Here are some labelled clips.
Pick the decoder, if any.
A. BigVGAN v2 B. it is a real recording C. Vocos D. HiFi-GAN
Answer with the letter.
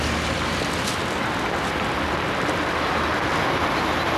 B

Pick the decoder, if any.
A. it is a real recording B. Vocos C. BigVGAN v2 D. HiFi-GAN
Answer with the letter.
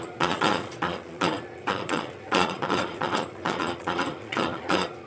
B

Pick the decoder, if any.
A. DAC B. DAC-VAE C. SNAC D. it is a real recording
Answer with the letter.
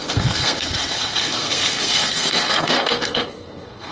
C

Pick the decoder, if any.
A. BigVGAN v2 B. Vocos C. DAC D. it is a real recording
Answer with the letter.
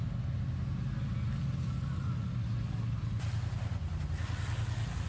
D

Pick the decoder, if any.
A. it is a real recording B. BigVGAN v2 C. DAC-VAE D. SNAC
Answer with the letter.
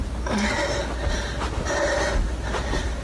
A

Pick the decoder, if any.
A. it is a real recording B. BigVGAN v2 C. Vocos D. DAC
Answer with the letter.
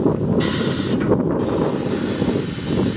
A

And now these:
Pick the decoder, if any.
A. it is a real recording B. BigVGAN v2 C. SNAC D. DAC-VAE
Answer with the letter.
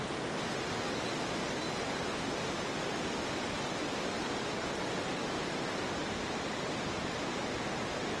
A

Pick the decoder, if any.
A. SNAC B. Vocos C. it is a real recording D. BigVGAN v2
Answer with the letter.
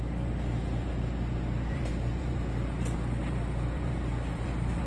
D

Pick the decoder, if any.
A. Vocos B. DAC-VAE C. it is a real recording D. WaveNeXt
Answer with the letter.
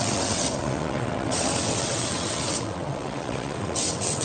D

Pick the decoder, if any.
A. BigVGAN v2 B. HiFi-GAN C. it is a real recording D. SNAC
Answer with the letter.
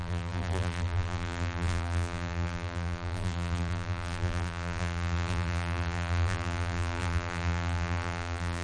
A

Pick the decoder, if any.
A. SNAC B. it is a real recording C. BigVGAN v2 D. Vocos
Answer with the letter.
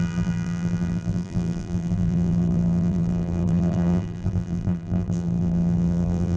C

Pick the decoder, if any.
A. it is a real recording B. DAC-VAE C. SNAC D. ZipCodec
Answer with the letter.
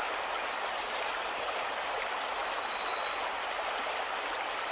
A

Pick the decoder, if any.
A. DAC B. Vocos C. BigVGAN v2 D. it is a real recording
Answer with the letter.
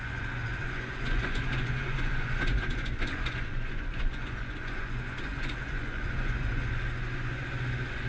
B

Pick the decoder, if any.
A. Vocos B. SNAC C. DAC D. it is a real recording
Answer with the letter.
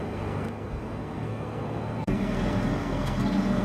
B